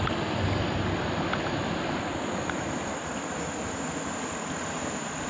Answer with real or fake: real